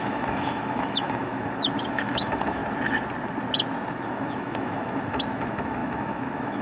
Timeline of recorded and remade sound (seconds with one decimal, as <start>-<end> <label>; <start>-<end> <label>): 0.0-2.6 remade; 2.6-3.9 recorded; 3.9-6.6 remade

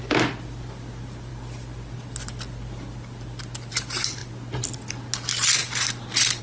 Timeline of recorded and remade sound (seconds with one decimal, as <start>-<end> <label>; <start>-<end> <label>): 0.0-6.4 recorded

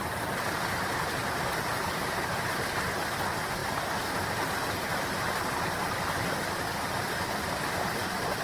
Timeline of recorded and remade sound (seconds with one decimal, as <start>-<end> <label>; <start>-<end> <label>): 0.0-8.4 recorded

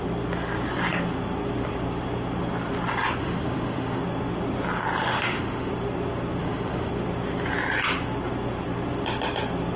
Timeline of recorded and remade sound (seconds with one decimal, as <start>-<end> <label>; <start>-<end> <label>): 0.0-3.2 recorded; 3.2-4.0 remade; 4.0-5.0 recorded; 5.0-5.7 remade; 5.7-6.4 recorded; 6.4-6.9 remade; 6.9-9.8 recorded

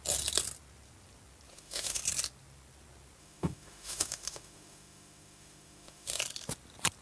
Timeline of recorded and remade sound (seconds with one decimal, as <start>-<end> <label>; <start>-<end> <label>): 0.0-1.5 recorded; 1.5-2.0 remade; 2.0-3.2 recorded; 3.2-6.2 remade; 6.2-7.0 recorded

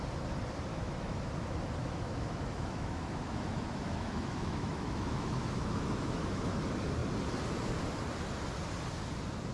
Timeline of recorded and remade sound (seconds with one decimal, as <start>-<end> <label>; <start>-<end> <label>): 0.0-0.7 recorded; 0.7-1.3 remade; 1.3-1.8 recorded; 1.8-6.6 remade; 6.6-9.5 recorded

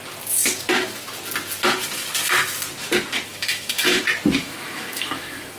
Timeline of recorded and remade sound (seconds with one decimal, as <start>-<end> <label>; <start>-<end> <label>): 0.0-3.3 recorded; 3.3-4.0 remade; 4.0-4.4 recorded; 4.4-5.6 remade